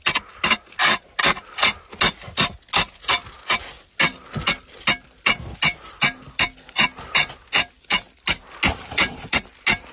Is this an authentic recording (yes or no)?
yes